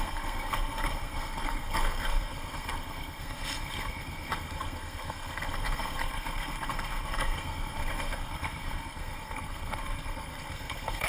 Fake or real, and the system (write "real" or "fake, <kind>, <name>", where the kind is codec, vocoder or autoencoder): fake, codec, SNAC